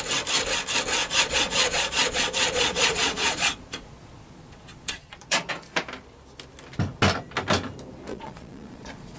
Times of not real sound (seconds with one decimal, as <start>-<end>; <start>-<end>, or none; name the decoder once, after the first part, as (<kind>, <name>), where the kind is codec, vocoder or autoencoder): 1.0-5.5 (vocoder, Vocos); 8.1-9.2

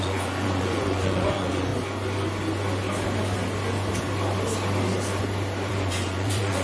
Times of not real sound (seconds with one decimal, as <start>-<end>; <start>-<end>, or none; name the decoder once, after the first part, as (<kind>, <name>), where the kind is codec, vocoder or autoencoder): 0.0-1.7 (vocoder, Vocos); 5.7-6.6

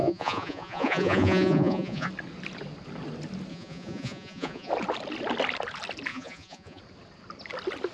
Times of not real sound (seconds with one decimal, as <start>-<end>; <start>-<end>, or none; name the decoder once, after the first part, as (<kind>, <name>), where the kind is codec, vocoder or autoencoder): 0.0-2.1 (vocoder, Vocos); 3.5-4.7; 6.1-6.8

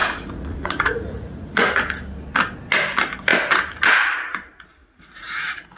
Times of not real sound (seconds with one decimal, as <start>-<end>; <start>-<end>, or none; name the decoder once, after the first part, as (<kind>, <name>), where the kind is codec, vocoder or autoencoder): 0.0-1.7 (vocoder, Vocos); 4.8-5.8